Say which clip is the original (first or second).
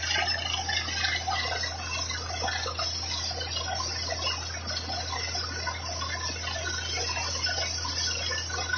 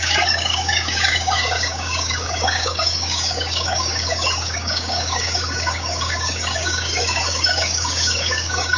first